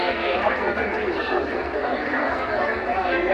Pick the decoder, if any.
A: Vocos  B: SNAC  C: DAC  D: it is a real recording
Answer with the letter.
B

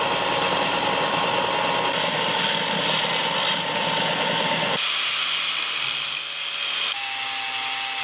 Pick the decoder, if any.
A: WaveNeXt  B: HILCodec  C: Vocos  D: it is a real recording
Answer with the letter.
D